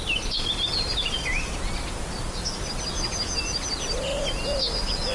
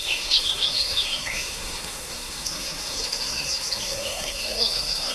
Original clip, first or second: first